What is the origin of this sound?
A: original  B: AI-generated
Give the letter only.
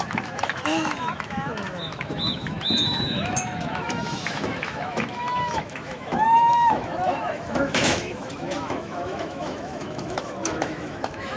B